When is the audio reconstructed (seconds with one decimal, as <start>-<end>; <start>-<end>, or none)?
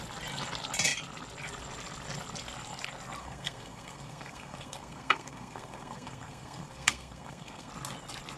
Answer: 3.2-7.7